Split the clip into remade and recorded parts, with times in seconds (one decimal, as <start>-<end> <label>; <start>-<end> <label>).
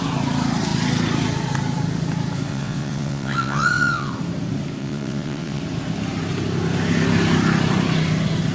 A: 0.0-2.5 recorded; 2.5-4.1 remade; 4.1-4.8 recorded; 4.8-5.6 remade; 5.6-8.5 recorded